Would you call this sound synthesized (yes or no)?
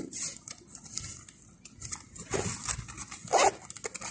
no